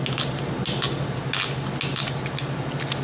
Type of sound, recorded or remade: recorded